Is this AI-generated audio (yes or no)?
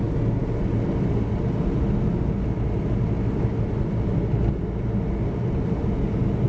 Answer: no